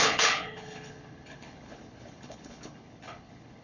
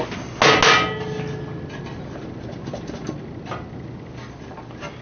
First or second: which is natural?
second